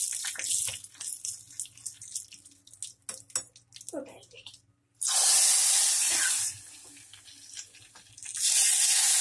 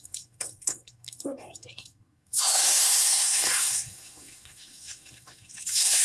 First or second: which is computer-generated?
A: second